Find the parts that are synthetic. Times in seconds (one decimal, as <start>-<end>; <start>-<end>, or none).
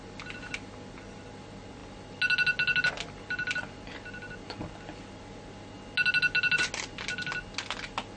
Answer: none